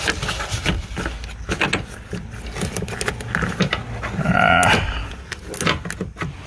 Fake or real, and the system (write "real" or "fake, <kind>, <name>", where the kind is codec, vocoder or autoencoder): real